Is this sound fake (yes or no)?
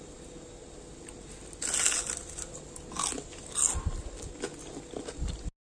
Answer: no